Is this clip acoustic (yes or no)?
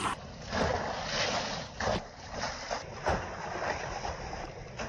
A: yes